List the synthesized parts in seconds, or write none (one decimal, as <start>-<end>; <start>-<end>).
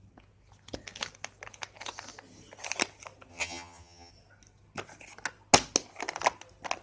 3.3-4.1